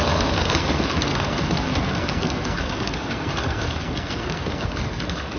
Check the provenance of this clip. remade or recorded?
remade